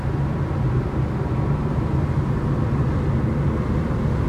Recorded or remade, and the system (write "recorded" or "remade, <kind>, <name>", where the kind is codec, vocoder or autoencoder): recorded